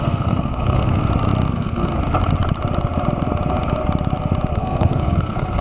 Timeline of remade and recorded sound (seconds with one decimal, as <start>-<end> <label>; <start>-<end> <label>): 0.0-1.0 remade; 1.0-1.5 recorded; 1.5-1.9 remade; 1.9-4.5 recorded; 4.5-5.6 remade